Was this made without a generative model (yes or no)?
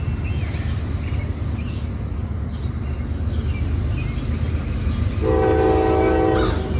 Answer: yes